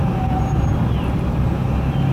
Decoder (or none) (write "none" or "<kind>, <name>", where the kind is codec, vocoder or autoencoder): none